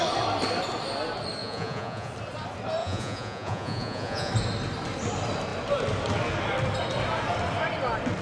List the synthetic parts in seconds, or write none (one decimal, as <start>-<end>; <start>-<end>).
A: 1.4-2.1; 2.8-4.3